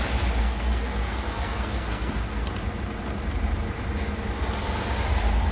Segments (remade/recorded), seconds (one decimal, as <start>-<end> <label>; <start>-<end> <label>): 0.0-0.4 recorded; 0.4-2.5 remade; 2.5-5.5 recorded